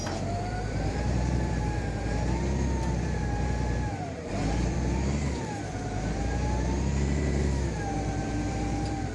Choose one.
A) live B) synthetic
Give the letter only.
B